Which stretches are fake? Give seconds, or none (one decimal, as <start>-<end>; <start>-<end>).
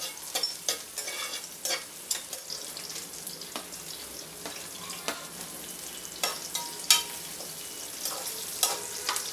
none